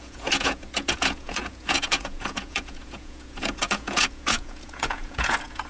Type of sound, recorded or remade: remade